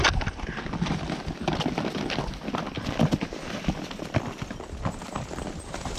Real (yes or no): yes